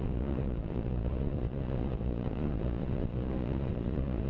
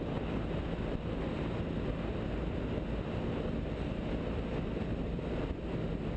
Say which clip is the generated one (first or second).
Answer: first